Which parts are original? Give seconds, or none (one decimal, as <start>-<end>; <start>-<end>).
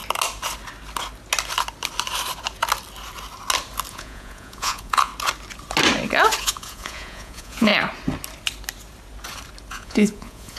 0.0-3.9; 5.1-6.4; 7.7-9.7